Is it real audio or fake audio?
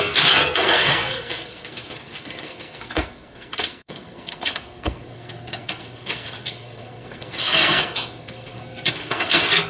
fake